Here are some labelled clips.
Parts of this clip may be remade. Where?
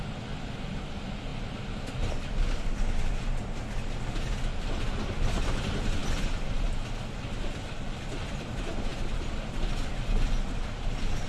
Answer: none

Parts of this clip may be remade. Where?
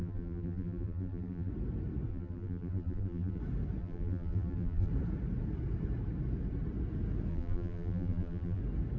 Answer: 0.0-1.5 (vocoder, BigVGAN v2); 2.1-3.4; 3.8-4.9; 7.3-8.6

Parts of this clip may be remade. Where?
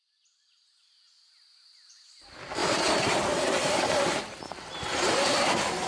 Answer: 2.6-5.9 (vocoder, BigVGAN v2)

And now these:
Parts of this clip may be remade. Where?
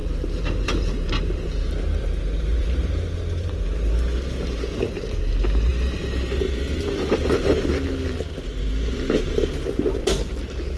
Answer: 0.0-5.1 (vocoder, BigVGAN v2); 5.7-7.7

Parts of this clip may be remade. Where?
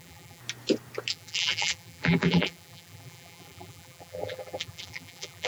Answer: 0.0-0.4 (vocoder, BigVGAN v2); 1.1-5.5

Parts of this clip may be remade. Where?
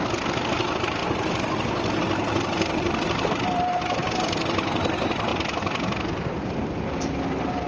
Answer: 0.0-5.3 (vocoder, BigVGAN v2); 6.9-7.7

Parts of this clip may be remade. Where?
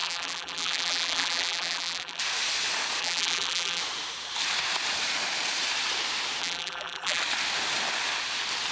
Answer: 0.0-2.2 (vocoder, BigVGAN v2); 3.0-3.8; 6.4-7.2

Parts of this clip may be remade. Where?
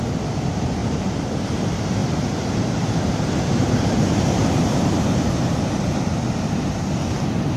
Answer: 0.8-1.6 (vocoder, BigVGAN v2); 2.0-6.0